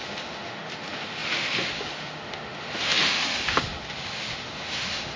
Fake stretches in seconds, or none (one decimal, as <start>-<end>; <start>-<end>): 0.0-5.2